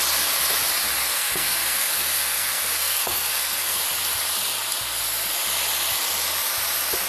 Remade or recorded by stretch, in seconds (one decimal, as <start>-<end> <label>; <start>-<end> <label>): 0.0-1.0 recorded; 1.0-3.8 remade; 3.8-7.1 recorded